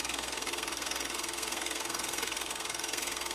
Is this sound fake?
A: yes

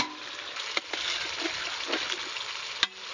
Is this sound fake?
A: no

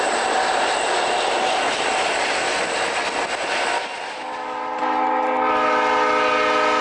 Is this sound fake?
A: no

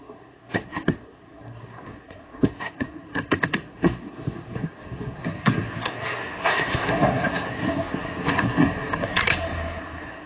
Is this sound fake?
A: yes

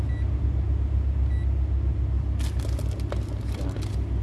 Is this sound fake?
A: no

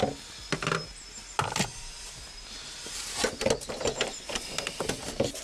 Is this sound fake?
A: no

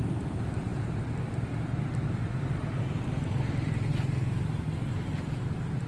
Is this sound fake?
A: no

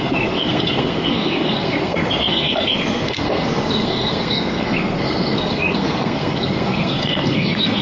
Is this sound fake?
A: yes